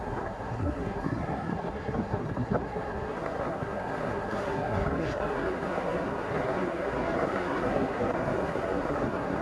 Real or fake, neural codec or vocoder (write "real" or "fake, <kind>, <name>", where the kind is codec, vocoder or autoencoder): fake, codec, SNAC